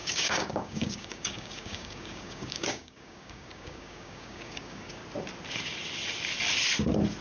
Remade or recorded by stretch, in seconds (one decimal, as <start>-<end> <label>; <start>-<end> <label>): 0.0-5.0 remade; 5.0-7.2 recorded

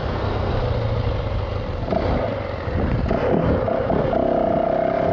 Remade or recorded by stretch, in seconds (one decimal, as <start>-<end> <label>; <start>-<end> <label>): 0.0-0.5 remade; 0.5-5.1 recorded

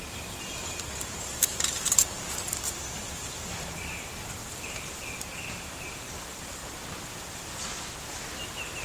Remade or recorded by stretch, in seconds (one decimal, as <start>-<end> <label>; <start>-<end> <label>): 0.0-6.6 remade; 6.6-7.8 recorded; 7.8-8.8 remade